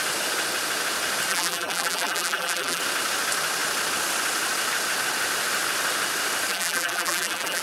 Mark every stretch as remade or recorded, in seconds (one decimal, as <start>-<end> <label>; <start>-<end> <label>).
0.0-1.3 recorded; 1.3-2.8 remade; 2.8-6.5 recorded; 6.5-7.6 remade